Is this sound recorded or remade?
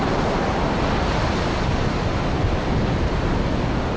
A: recorded